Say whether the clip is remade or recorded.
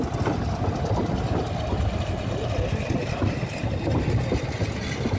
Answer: recorded